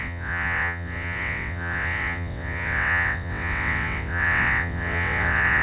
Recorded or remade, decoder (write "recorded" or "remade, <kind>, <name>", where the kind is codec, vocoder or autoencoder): remade, vocoder, WaveNeXt